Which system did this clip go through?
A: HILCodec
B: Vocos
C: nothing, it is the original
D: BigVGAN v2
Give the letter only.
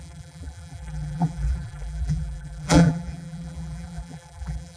D